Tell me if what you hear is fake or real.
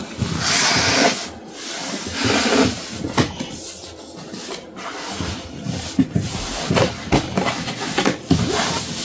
real